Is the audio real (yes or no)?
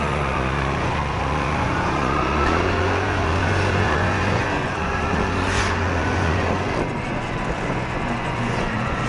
no